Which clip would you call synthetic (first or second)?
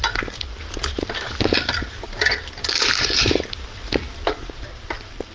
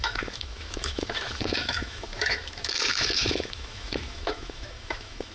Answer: second